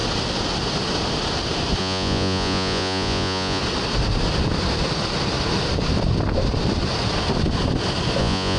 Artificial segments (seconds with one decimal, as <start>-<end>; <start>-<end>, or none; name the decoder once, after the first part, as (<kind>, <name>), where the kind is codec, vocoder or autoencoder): 1.8-3.6 (vocoder, Vocos); 8.2-8.6